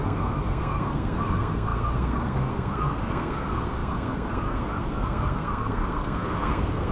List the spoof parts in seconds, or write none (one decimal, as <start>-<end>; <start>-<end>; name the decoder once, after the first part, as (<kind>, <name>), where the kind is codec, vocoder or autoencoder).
0.0-6.9 (codec, SNAC)